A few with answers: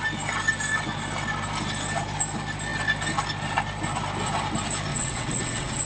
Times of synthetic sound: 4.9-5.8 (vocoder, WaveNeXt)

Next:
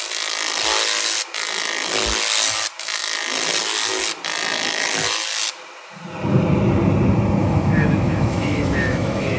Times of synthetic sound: 7.4-9.4 (autoencoder, DAC-VAE)

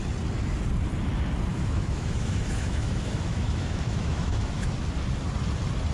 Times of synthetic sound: 1.5-4.7 (autoencoder, DAC-VAE)

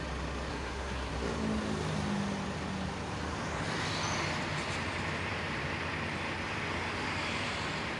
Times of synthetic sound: 0.5-1.1 (codec, SNAC)

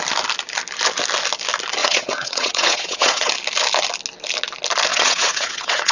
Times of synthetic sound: 1.8-3.3 (vocoder, WaveNeXt); 4.9-5.9

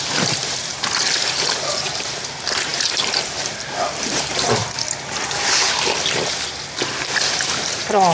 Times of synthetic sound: 0.0-0.7 (vocoder, BigVGAN v2); 1.3-4.6; 7.6-8.1

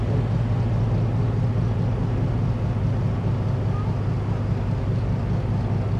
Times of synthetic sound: none